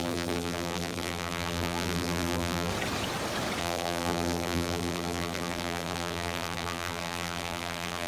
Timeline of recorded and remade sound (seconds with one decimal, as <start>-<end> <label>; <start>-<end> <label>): 0.0-2.7 remade; 2.7-3.6 recorded; 3.6-8.1 remade